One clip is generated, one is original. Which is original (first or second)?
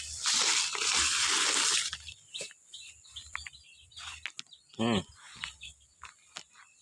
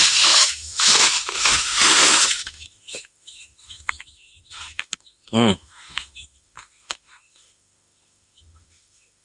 first